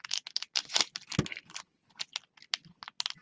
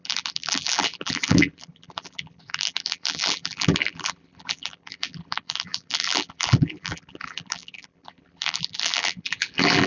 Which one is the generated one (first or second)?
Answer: second